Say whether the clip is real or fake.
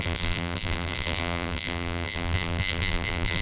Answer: fake